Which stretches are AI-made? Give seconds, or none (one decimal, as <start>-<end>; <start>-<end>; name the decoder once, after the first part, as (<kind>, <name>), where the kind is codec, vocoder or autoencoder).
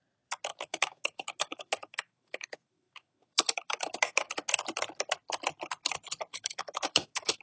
0.5-4.3 (autoencoder, DAC-VAE); 6.3-7.4